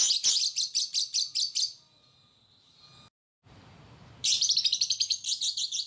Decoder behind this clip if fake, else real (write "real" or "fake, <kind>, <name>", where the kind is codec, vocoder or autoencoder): real